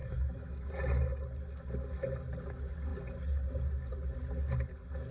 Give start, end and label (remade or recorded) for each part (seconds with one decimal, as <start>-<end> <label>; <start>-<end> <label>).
0.0-0.7 remade; 0.7-5.1 recorded